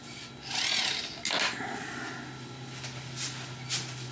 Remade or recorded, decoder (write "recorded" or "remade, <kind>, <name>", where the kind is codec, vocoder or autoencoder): recorded